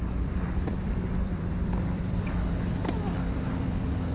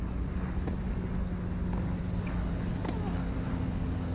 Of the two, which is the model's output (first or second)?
first